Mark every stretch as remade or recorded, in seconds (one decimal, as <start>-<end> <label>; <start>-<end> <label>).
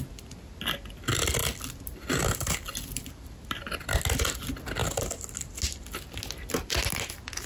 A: 0.0-1.4 recorded; 1.4-3.8 remade; 3.8-7.5 recorded